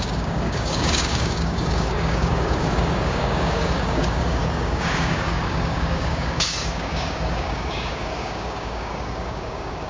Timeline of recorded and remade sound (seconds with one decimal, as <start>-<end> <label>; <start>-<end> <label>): 0.0-9.9 remade